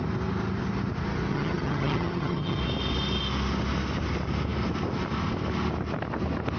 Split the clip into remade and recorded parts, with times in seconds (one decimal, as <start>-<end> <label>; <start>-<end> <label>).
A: 0.0-1.3 recorded; 1.3-2.6 remade; 2.6-6.6 recorded